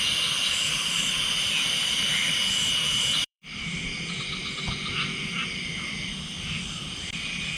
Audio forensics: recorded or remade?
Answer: remade